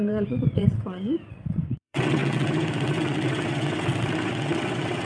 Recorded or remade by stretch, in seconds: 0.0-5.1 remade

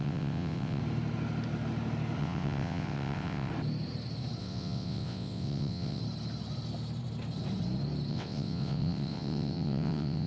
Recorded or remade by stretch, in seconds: 0.0-0.8 remade; 0.8-2.2 recorded; 2.2-3.5 remade; 3.5-4.4 recorded; 4.4-6.0 remade; 6.0-8.1 recorded; 8.1-10.3 remade

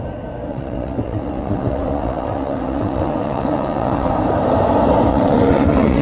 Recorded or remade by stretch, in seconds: 0.0-0.5 recorded; 0.5-4.1 remade; 4.1-5.1 recorded; 5.1-6.0 remade

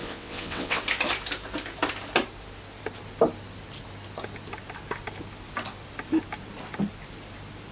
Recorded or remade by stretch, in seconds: 0.0-0.8 remade; 0.8-7.7 recorded

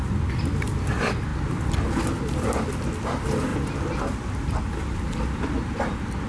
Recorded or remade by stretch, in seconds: 0.0-6.3 recorded

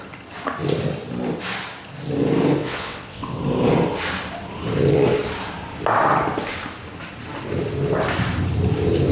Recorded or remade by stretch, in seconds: 0.0-2.6 recorded; 2.6-3.4 remade; 3.4-9.1 recorded